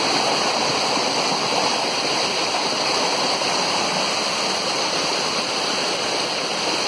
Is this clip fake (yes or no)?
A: no